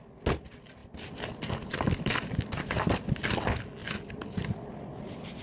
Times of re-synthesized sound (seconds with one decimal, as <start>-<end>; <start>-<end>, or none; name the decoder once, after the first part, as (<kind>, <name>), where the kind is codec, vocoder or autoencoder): 0.8-3.1 (vocoder, BigVGAN v2); 3.8-5.4